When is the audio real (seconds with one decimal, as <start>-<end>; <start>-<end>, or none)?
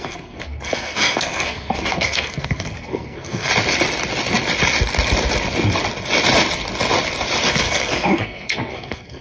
3.5-7.5